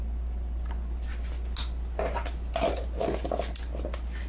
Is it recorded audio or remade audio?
recorded